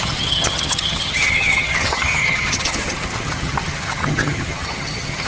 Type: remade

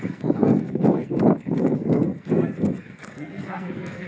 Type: remade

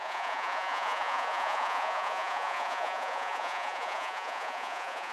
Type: remade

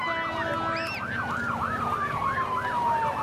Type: recorded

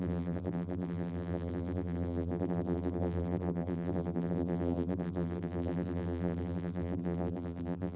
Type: remade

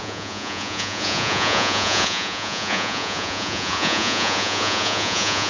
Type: remade